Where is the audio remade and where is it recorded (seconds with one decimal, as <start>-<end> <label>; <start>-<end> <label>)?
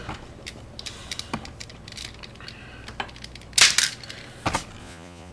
0.0-4.8 recorded; 4.8-5.3 remade